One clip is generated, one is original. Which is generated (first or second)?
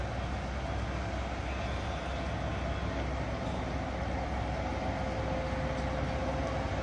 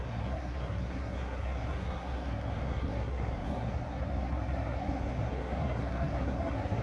second